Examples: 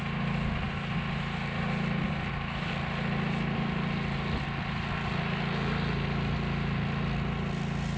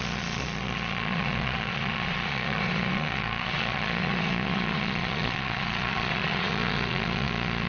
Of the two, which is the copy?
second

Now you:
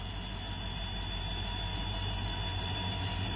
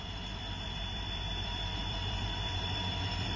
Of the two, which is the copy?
second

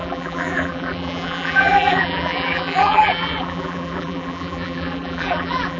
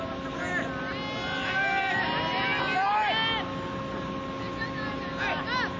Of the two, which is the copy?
first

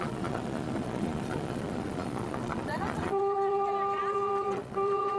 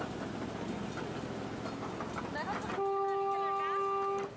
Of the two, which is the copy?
first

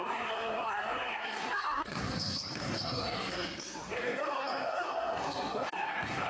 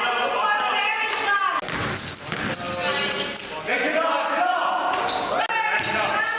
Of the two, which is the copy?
first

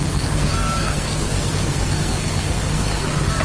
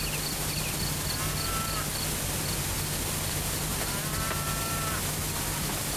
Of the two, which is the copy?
first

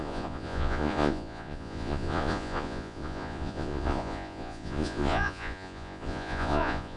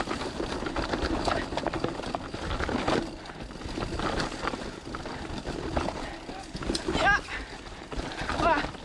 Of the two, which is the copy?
first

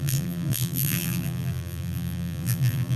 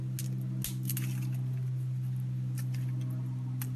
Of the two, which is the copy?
first